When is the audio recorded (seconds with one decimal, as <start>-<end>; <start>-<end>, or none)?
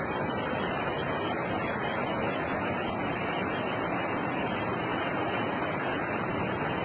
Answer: 1.0-3.8; 4.9-5.6